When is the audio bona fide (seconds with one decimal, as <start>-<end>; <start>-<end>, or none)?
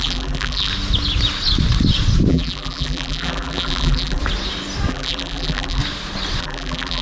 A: 0.7-2.3; 4.2-4.9; 5.8-6.4